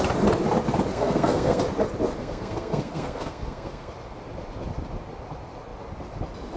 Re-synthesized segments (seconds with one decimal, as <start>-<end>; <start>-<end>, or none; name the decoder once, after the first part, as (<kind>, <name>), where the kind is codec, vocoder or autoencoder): 0.9-1.6 (codec, SNAC); 2.2-3.9